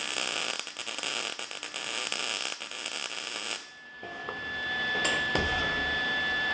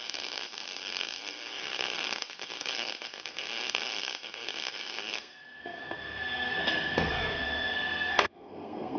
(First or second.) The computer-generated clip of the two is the second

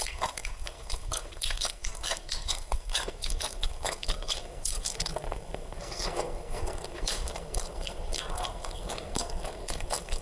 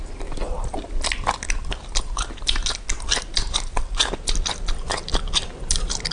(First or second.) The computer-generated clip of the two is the first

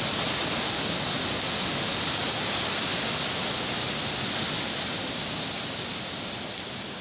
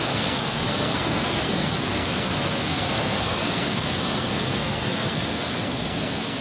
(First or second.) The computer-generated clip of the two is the second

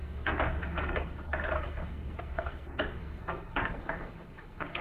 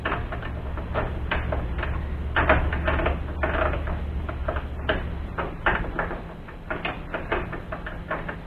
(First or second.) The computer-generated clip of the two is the first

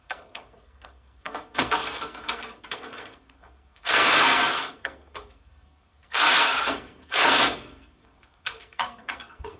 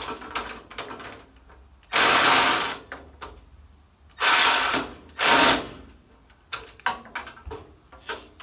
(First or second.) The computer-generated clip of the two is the first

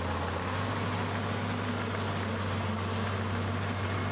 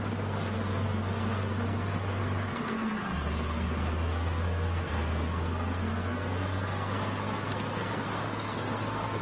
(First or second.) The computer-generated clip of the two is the second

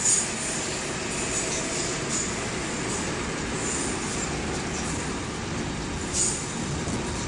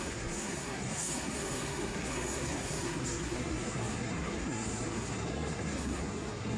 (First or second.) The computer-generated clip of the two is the second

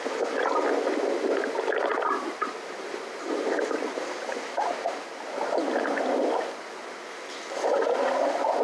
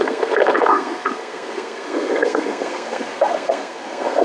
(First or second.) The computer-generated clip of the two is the second